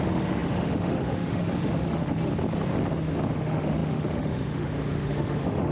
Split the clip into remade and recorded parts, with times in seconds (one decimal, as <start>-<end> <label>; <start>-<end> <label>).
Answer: 0.0-2.3 remade; 2.3-3.3 recorded; 3.3-5.7 remade